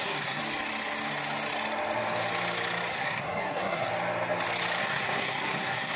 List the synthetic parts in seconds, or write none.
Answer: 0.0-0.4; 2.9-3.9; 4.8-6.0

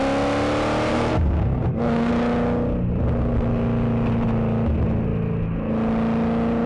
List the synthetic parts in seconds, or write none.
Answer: 0.9-2.1

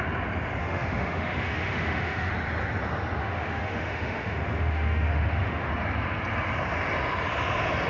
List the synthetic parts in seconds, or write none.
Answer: 0.6-2.3; 3.2-5.7

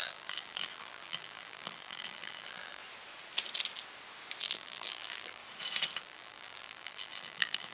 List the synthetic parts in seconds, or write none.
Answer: 0.0-2.8; 4.4-5.4; 6.0-7.7

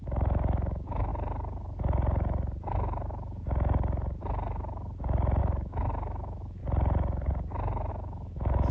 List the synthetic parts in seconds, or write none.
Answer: 0.0-1.1; 5.4-6.6; 7.9-8.7

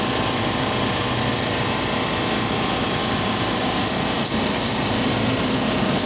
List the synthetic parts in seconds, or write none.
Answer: none

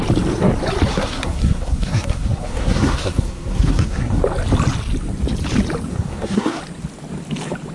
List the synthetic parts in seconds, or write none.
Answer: 0.9-4.2; 5.9-6.6

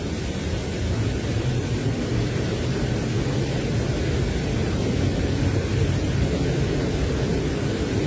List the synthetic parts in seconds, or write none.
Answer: none